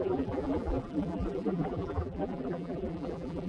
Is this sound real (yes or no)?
no